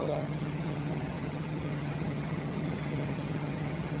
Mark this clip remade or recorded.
remade